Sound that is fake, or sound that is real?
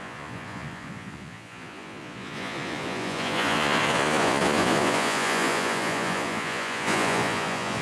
fake